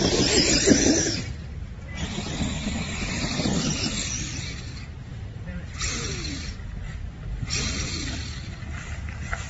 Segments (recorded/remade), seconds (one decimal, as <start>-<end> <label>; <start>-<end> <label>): 0.0-5.1 recorded; 5.1-6.1 remade; 6.1-9.5 recorded